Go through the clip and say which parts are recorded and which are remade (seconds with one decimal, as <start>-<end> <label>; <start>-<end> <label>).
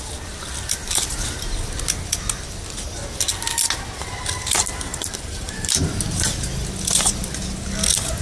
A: 0.0-4.9 recorded; 4.9-5.9 remade; 5.9-8.2 recorded